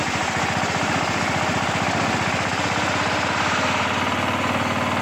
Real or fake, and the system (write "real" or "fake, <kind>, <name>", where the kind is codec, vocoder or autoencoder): real